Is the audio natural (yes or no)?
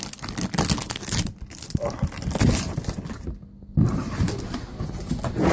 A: yes